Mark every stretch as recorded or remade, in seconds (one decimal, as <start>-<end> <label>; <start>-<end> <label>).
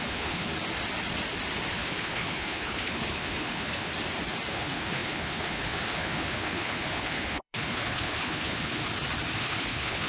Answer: 0.0-0.5 remade; 0.5-1.7 recorded; 1.7-3.9 remade; 3.9-4.5 recorded; 4.5-8.8 remade; 8.8-9.4 recorded; 9.4-10.1 remade